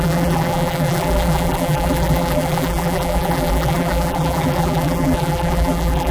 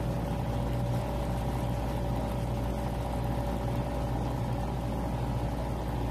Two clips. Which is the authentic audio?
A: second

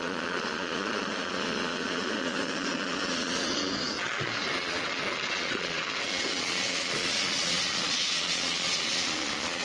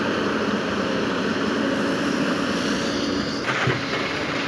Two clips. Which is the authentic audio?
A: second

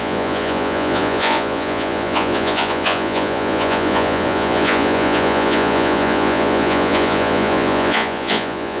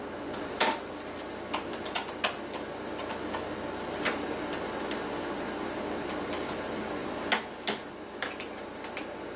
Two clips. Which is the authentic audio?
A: second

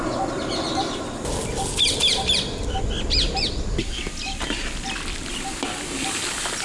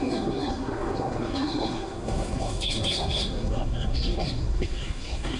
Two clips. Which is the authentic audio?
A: first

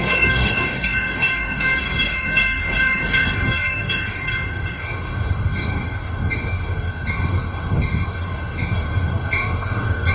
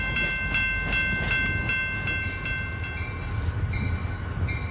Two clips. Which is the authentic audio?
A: second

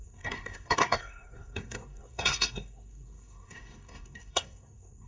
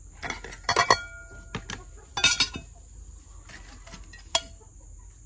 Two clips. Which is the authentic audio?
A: second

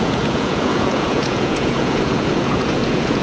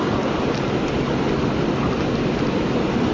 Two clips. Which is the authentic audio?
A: second